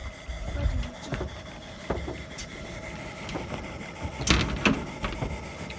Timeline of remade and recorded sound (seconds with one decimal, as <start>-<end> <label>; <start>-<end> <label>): 0.0-0.7 remade; 0.7-5.8 recorded